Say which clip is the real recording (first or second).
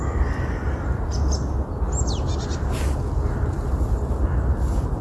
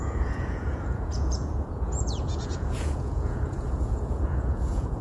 first